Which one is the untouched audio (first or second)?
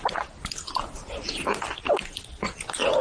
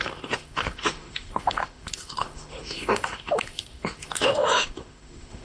first